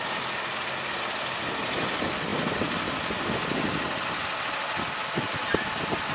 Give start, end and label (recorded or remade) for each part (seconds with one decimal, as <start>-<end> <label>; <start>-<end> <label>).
0.0-6.1 recorded